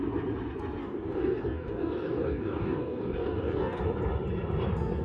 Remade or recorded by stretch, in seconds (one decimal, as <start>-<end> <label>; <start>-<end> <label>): 0.0-0.8 recorded; 0.8-3.8 remade; 3.8-5.0 recorded